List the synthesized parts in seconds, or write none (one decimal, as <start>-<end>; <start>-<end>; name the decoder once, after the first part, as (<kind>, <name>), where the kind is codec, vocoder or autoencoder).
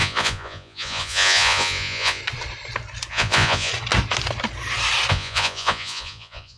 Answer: 0.0-2.2 (vocoder, Vocos); 3.1-3.7; 5.1-6.6